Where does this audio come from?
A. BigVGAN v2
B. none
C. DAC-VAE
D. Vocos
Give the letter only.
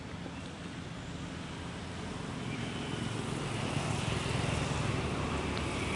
B